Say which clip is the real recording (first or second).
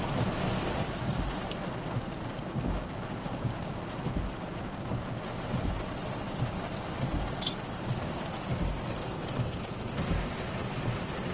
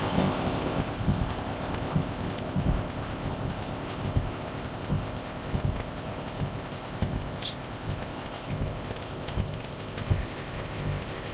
first